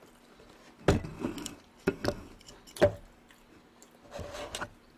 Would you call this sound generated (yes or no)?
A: no